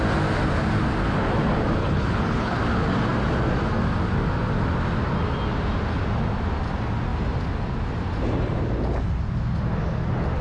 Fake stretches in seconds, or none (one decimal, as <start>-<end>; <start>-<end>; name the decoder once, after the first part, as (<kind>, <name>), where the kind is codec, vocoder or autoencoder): 1.8-2.6 (codec, HILCodec)

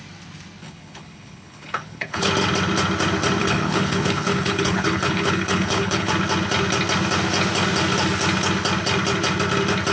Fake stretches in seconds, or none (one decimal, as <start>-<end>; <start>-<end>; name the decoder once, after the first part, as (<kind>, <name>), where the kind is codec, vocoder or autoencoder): 0.6-2.3 (codec, HILCodec); 3.4-6.1

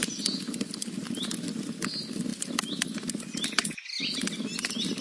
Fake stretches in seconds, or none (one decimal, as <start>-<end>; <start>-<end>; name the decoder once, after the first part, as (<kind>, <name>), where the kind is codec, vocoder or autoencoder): none

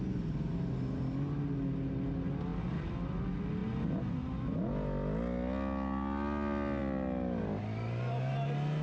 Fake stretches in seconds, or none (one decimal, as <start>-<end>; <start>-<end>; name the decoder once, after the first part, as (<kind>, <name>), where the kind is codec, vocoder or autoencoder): none